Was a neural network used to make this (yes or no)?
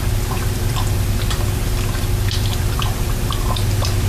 yes